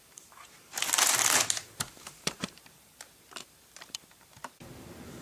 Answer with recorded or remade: remade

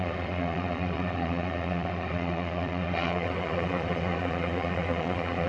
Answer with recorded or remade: remade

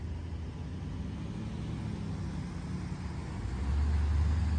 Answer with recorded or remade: recorded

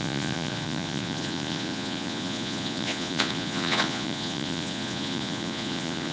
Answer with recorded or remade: remade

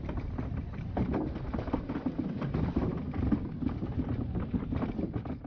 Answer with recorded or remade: recorded